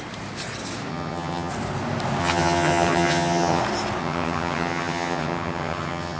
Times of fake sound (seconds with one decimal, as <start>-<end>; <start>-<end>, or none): 0.9-1.5; 2.2-3.6; 4.0-6.2